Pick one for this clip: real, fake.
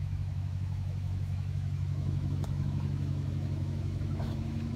fake